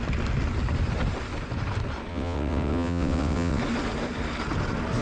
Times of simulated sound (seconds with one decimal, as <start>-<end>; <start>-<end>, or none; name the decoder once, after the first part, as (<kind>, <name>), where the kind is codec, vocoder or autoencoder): 2.1-3.6 (vocoder, WaveNeXt)

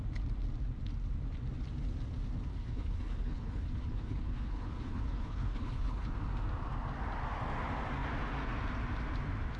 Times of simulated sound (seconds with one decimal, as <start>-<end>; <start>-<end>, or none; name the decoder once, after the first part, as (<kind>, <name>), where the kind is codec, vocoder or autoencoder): 2.5-6.1 (codec, HILCodec)

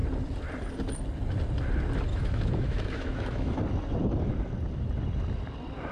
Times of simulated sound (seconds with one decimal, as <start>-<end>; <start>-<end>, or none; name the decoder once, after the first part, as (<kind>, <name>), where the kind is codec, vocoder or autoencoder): 2.1-3.6 (autoencoder, DAC-VAE)

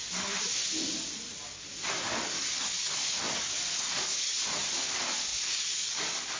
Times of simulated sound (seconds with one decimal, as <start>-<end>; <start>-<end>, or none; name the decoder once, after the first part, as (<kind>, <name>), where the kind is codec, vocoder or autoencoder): 2.0-4.3 (codec, DAC); 4.8-6.4

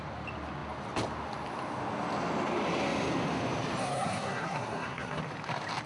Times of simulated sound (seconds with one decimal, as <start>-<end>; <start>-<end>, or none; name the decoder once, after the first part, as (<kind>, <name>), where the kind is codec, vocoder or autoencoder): 3.8-5.2 (codec, SNAC)

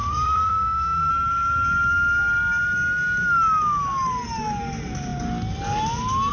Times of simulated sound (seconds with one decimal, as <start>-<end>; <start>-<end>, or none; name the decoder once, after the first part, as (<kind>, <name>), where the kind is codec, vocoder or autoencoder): 0.0-1.1 (autoencoder, DAC-VAE)

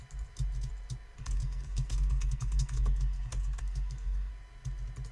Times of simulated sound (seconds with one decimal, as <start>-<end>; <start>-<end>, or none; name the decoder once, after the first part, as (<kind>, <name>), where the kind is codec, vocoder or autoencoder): 1.2-4.3 (codec, SNAC)